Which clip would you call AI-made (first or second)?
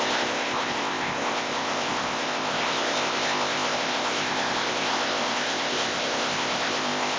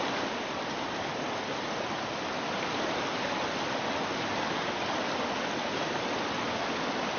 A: first